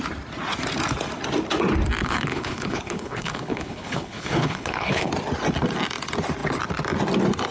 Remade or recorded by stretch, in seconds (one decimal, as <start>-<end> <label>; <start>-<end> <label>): 0.0-2.0 recorded; 2.0-5.1 remade; 5.1-7.5 recorded